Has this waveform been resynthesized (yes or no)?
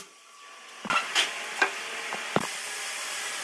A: no